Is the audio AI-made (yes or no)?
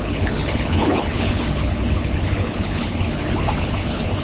yes